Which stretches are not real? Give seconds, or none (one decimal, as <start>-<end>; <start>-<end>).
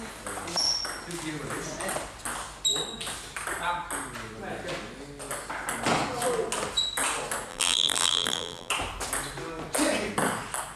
7.5-8.7